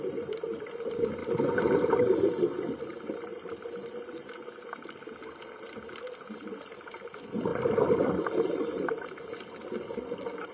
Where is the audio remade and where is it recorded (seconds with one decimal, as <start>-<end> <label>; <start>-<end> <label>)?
0.0-3.3 recorded; 3.3-5.9 remade; 5.9-10.5 recorded